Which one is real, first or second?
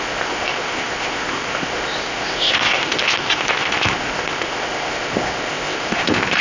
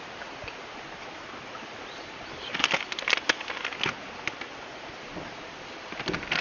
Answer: second